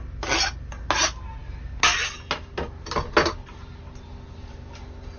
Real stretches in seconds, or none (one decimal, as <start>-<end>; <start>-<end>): 0.0-5.2